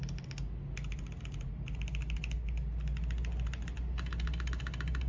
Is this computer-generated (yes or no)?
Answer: no